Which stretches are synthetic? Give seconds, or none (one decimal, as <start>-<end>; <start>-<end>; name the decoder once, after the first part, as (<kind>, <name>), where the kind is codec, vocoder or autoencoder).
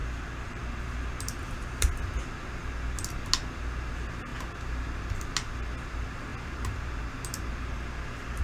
0.0-0.6 (vocoder, BigVGAN v2); 6.3-7.0